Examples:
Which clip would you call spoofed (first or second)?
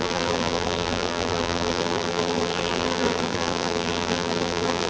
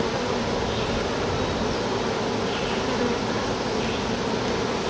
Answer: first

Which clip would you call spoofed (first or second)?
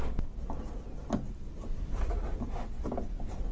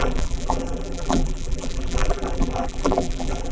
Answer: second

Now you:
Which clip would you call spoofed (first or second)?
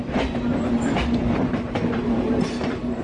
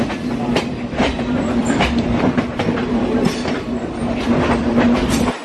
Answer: second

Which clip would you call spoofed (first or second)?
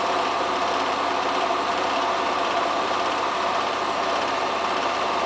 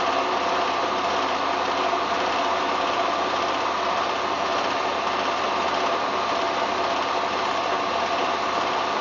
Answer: first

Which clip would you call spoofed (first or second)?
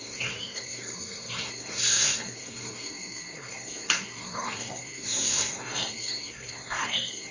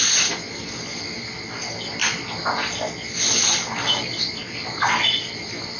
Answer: first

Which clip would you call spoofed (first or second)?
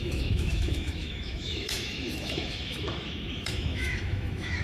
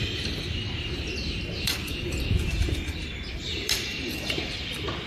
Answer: first